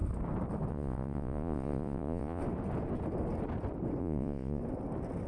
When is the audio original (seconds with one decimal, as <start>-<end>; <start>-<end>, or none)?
0.0-0.7; 2.4-4.0; 4.6-5.3